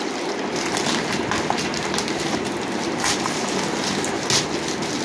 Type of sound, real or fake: real